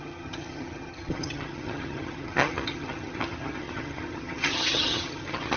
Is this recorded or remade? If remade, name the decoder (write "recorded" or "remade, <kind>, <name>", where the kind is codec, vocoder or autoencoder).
remade, vocoder, HiFi-GAN